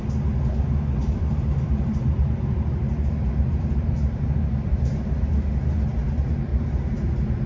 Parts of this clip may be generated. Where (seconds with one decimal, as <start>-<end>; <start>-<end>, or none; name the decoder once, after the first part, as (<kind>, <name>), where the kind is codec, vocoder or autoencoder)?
1.0-4.8 (vocoder, BigVGAN v2); 6.5-7.5